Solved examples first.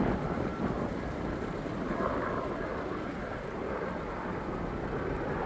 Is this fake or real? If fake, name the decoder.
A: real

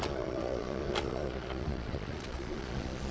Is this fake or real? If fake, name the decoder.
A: fake, vocoder, Vocos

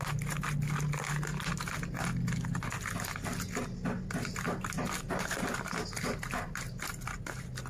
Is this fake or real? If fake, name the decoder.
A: real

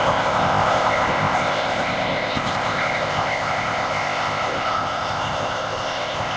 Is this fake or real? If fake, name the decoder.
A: fake, codec, ZipCodec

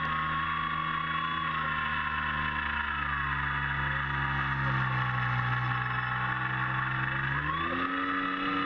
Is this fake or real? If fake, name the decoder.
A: real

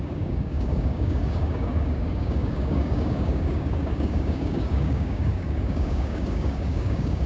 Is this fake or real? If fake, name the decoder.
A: fake, codec, DAC